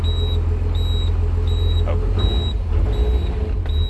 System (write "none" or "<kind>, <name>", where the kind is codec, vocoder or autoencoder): none